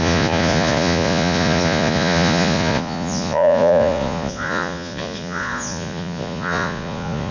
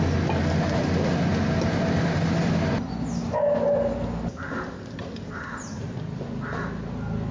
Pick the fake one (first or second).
first